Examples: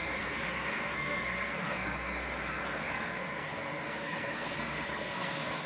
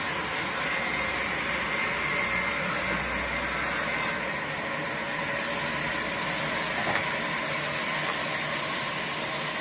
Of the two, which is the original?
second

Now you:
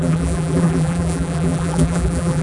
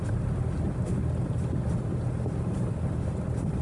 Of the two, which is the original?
second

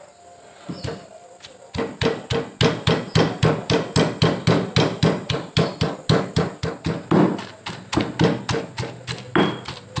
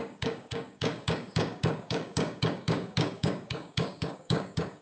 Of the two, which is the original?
first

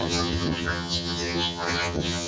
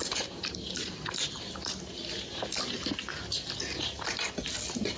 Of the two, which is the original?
second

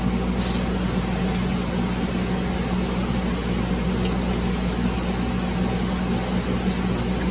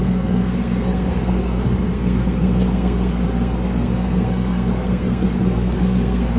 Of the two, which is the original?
first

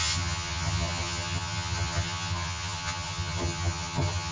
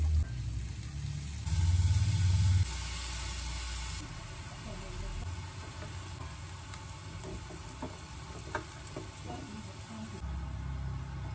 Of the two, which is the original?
second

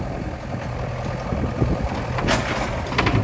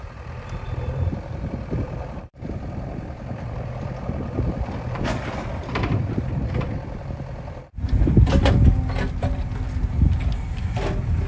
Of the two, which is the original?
first